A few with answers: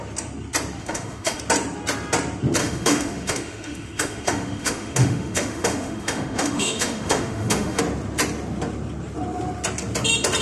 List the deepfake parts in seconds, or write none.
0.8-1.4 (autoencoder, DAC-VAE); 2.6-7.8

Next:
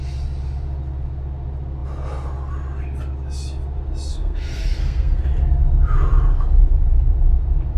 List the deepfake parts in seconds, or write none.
4.1-5.2 (codec, SNAC)

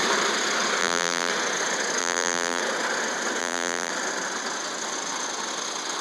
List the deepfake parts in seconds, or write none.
0.8-1.3 (vocoder, BigVGAN v2); 2.0-2.6; 3.4-3.9

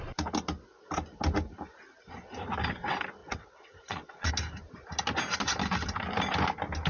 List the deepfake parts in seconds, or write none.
3.2-4.3 (vocoder, WaveNeXt)

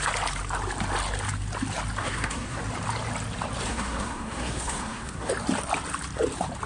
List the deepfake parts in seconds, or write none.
2.0-2.6 (codec, SNAC); 3.7-5.3

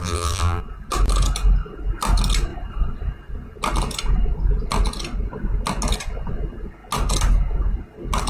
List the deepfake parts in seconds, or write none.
0.0-0.6 (vocoder, BigVGAN v2)

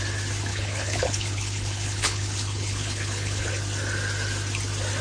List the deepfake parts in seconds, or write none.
0.5-3.5 (codec, HILCodec)

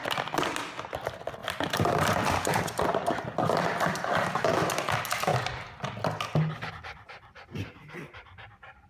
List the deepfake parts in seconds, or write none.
none